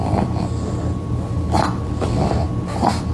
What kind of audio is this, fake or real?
real